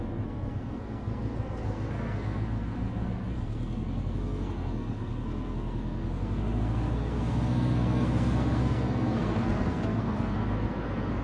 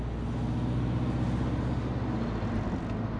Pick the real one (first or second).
second